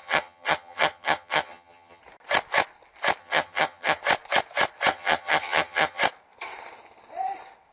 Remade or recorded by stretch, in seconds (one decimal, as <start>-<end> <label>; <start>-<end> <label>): 0.0-2.0 remade; 2.0-3.2 recorded; 3.2-4.0 remade; 4.0-4.9 recorded; 4.9-6.0 remade; 6.0-7.7 recorded